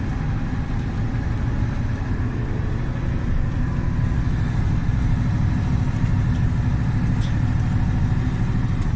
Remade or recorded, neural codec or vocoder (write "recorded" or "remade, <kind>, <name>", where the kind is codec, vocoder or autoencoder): recorded